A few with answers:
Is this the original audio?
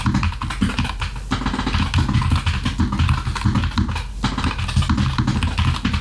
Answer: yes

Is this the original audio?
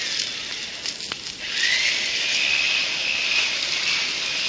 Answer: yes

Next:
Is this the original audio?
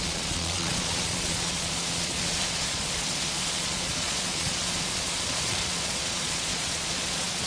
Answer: no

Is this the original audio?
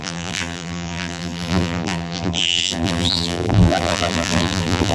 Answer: no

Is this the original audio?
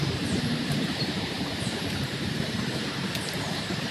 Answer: no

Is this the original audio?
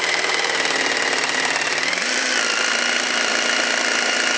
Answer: no